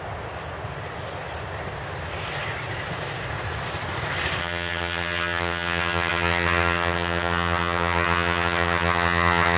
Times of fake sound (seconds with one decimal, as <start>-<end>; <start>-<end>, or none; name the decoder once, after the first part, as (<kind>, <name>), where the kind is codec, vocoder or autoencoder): 4.4-9.6 (vocoder, HiFi-GAN)